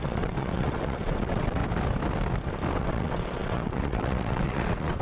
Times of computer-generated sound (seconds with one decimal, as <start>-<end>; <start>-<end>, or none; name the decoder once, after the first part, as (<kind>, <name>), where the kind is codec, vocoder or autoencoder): 0.0-1.6 (vocoder, WaveNeXt); 2.7-5.0